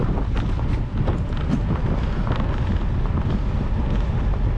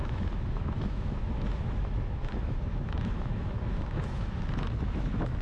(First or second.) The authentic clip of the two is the first